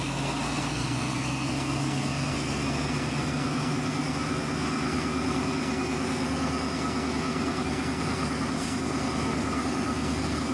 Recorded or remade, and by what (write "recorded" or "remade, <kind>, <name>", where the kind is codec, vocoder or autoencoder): remade, codec, SNAC